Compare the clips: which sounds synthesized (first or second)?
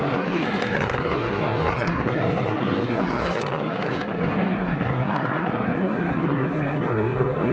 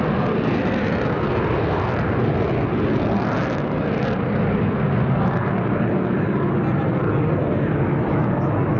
first